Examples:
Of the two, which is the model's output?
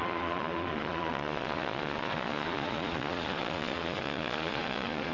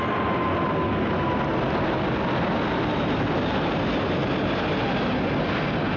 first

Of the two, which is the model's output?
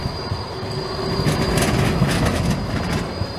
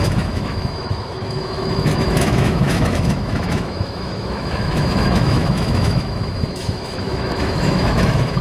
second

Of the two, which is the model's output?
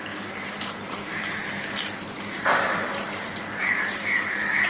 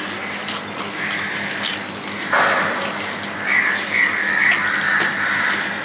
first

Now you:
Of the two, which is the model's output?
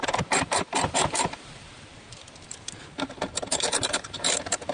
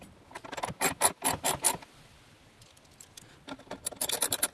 first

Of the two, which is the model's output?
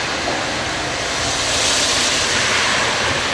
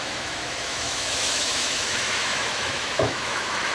second